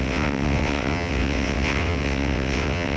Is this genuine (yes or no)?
no